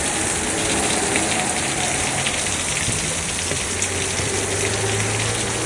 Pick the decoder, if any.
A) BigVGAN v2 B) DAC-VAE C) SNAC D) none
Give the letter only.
D